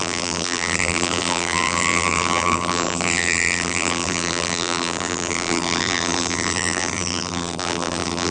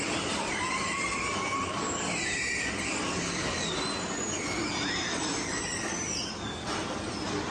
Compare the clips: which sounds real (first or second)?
second